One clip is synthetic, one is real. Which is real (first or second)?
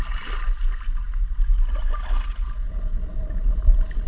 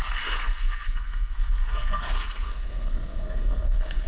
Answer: first